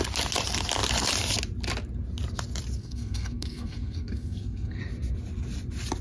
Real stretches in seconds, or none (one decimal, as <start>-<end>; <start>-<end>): 0.0-2.8; 4.8-6.0